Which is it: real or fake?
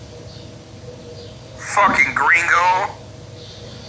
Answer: real